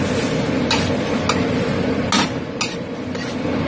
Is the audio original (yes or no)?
yes